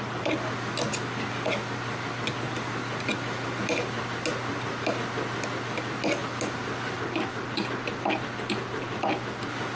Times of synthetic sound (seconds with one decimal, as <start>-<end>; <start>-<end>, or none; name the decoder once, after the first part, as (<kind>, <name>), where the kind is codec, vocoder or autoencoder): none